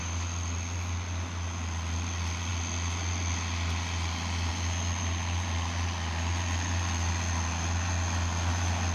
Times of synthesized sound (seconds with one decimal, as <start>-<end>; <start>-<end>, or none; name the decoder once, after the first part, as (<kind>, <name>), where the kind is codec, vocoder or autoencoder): none

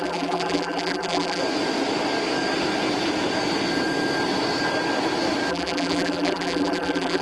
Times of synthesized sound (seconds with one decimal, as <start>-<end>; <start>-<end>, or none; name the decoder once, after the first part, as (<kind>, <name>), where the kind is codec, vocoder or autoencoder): 0.0-1.4 (vocoder, BigVGAN v2); 5.5-7.2